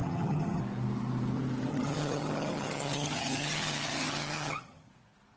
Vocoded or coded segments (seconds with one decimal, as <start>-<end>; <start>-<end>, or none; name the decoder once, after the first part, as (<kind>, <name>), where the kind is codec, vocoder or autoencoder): 0.0-0.6 (vocoder, HiFi-GAN); 1.7-4.9